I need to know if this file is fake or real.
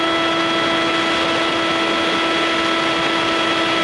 real